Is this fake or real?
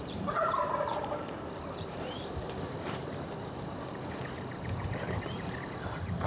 fake